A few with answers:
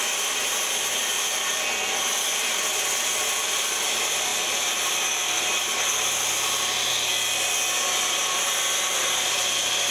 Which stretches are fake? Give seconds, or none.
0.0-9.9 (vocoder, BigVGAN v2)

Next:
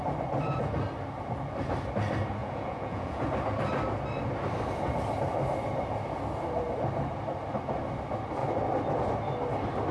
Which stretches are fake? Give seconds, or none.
2.4-3.2 (vocoder, Vocos)

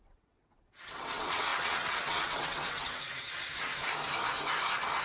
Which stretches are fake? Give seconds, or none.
0.0-3.7 (vocoder, WaveNeXt)

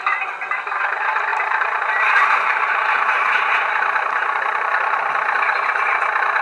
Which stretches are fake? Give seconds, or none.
1.3-5.1 (vocoder, BigVGAN v2)

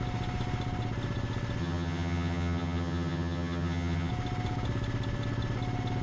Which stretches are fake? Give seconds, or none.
1.6-4.1 (vocoder, HiFi-GAN)

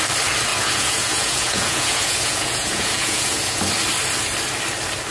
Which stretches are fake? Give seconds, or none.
0.5-3.6 (vocoder, Vocos)